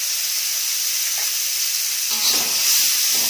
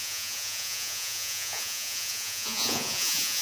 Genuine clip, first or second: first